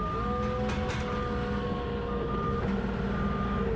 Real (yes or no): yes